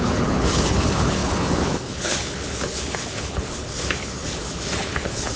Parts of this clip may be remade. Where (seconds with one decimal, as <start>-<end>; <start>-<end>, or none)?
0.0-5.4